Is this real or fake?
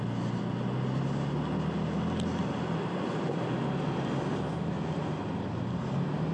real